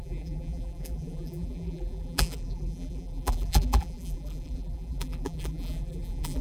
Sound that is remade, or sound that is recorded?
remade